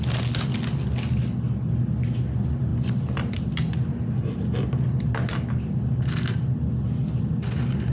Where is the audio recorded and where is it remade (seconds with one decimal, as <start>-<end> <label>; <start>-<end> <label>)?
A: 0.0-7.9 recorded